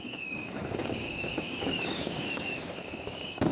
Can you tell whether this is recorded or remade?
remade